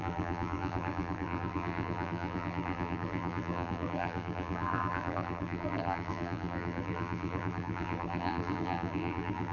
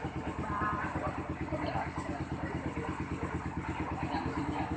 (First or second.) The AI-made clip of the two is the first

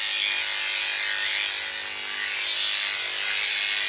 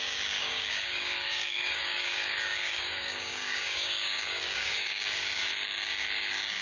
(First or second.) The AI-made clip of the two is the second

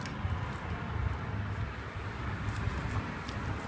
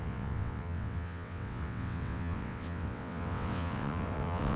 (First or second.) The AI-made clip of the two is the second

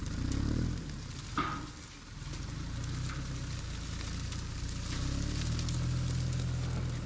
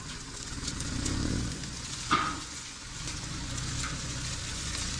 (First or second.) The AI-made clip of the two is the second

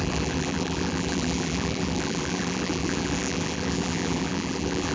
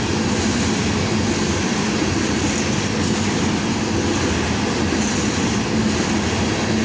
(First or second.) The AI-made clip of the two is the first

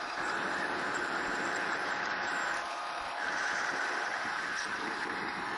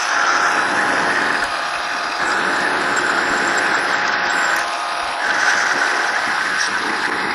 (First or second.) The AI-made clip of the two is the first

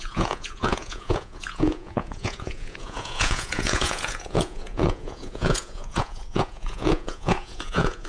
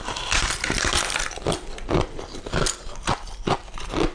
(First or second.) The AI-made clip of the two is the first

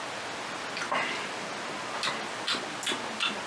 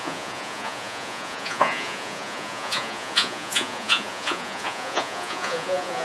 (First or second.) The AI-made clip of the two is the second